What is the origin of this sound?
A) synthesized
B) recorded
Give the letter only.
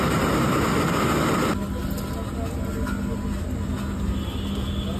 B